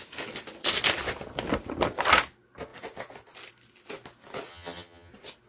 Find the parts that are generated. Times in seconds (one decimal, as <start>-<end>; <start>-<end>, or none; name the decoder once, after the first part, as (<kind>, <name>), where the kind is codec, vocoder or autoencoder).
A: 4.5-5.1 (vocoder, HiFi-GAN)